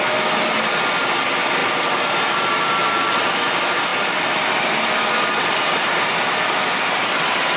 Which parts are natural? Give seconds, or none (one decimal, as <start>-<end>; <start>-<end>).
0.0-7.6